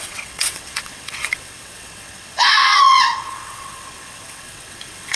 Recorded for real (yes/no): no